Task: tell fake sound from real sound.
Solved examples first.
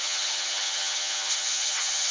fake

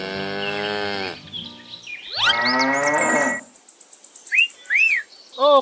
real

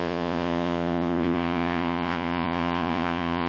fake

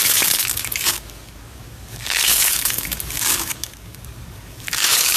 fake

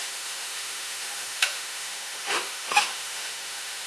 fake